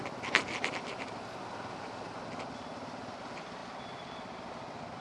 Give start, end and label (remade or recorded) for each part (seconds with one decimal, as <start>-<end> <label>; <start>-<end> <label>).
0.0-5.0 recorded